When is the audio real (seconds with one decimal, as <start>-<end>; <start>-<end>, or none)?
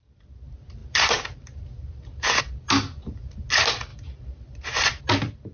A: 0.0-0.8; 2.4-3.9; 5.0-5.5